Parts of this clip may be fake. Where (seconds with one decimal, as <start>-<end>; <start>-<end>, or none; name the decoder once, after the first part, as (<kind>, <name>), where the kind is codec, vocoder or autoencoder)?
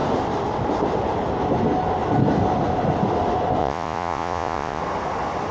3.6-4.8 (vocoder, Vocos)